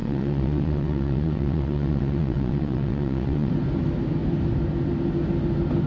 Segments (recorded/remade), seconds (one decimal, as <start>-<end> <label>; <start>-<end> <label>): 0.0-3.5 remade; 3.5-5.9 recorded